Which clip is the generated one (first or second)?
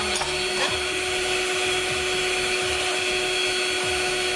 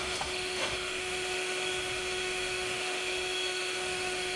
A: second